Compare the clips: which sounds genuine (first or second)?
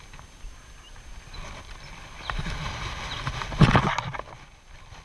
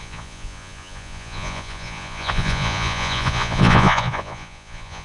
first